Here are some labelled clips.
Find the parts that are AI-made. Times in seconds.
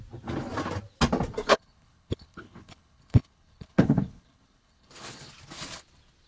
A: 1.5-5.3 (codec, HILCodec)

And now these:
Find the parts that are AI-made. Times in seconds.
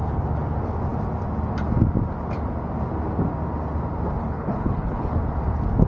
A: 4.2-5.2 (codec, HILCodec)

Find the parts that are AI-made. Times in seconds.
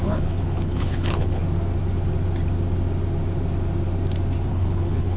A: 0.0-1.4 (codec, HILCodec); 4.5-5.2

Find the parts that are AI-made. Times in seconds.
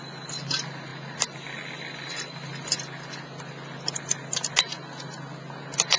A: none